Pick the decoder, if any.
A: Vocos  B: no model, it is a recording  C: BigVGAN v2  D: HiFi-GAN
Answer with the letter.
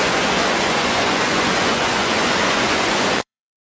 A